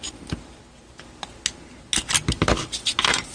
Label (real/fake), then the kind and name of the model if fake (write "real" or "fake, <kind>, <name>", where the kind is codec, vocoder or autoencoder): real